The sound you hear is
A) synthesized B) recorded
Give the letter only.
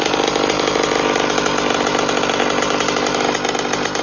B